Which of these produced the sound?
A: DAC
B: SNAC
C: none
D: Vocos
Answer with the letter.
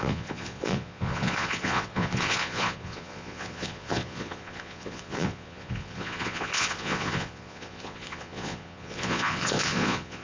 D